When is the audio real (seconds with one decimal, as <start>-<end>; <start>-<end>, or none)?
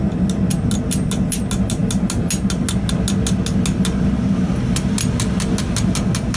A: 0.0-6.4